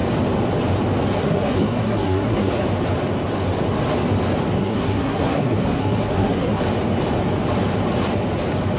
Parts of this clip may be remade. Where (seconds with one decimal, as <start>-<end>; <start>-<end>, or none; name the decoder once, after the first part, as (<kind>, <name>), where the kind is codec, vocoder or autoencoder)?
1.2-2.5 (codec, SNAC); 4.6-6.6